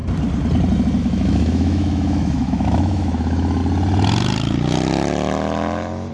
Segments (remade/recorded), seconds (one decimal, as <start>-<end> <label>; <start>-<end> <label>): 0.0-1.0 recorded; 1.0-3.6 remade; 3.6-6.1 recorded